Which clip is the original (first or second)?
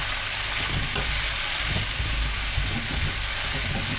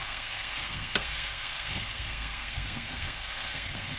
first